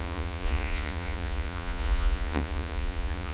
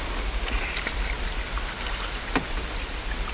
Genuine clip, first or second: second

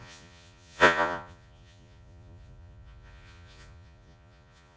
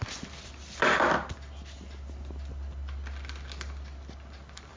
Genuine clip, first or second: second